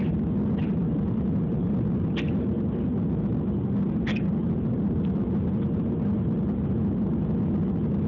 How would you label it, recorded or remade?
recorded